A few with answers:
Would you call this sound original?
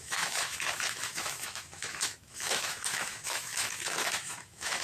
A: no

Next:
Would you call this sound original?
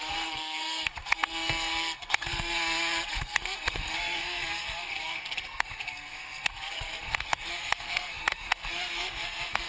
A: no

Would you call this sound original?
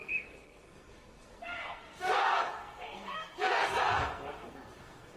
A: no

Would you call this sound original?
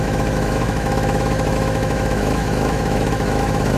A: no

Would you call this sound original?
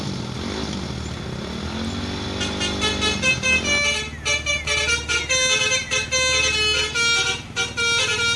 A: yes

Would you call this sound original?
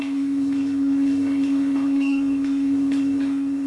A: no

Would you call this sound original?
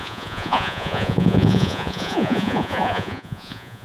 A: no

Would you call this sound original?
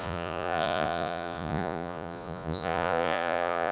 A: no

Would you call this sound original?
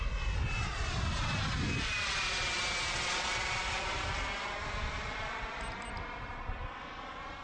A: yes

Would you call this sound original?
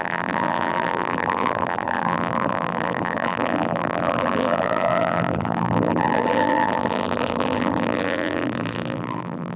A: no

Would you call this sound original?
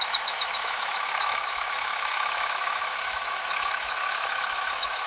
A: no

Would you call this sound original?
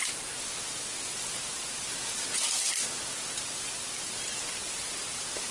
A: yes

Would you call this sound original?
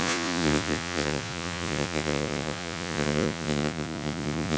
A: no